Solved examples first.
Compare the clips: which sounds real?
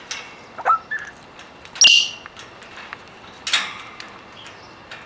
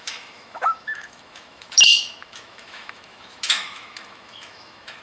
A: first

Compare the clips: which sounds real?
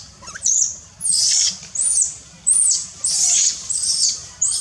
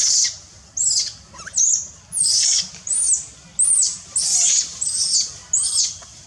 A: second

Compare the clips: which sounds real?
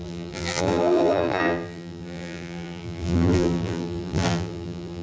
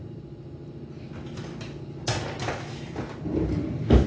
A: second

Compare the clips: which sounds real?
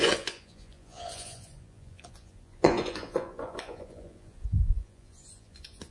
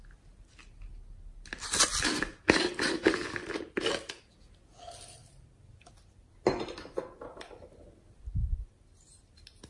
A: second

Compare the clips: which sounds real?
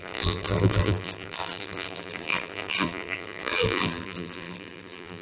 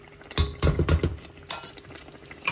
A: second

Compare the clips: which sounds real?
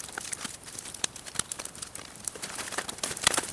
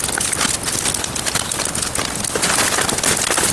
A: second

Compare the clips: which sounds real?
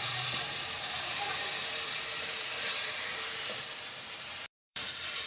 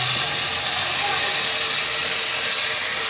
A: second